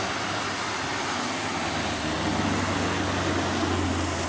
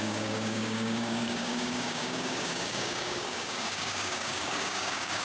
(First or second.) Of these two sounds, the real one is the first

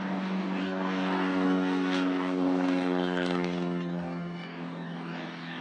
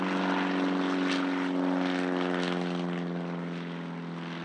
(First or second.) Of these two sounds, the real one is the second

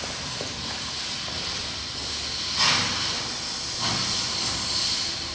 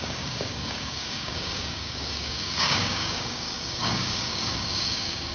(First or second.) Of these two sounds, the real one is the first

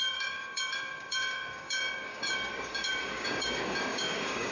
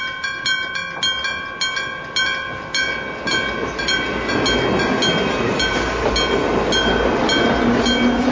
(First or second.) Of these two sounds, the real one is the second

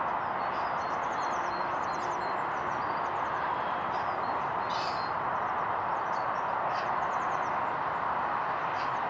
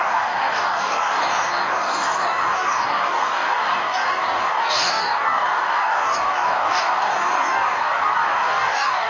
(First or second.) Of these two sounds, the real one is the first